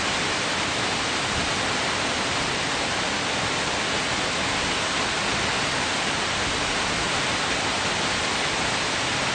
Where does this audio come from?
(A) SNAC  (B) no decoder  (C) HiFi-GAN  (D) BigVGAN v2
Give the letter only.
B